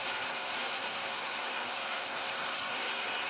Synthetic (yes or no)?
yes